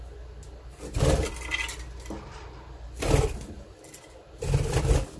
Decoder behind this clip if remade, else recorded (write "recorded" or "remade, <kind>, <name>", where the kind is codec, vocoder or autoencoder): recorded